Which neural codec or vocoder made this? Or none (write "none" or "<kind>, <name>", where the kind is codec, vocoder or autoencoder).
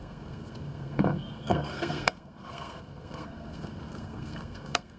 codec, SNAC